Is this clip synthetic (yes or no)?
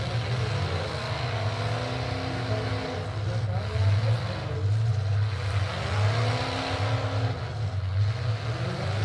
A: no